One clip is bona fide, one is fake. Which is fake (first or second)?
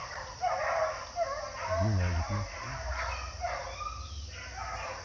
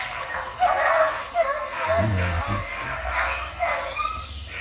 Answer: second